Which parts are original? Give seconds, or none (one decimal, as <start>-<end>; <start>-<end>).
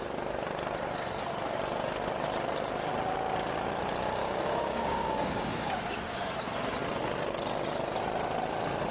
0.0-4.2; 5.7-8.9